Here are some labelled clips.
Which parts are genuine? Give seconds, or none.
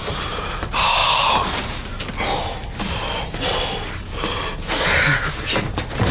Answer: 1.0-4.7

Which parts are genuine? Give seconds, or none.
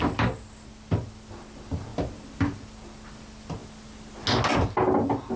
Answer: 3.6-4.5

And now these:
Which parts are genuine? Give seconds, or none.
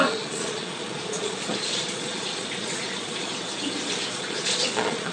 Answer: 3.3-4.1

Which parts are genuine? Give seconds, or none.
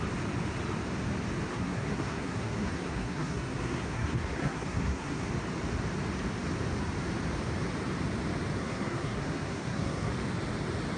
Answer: 0.0-1.5; 5.3-8.6; 10.1-11.0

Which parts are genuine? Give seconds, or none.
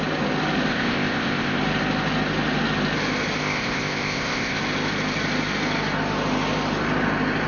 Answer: 0.0-0.7; 1.6-3.4; 4.6-7.5